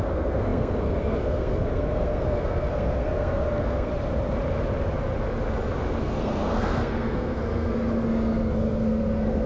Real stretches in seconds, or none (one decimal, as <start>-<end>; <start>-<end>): 3.9-6.0